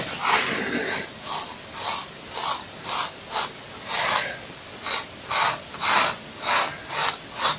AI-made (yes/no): no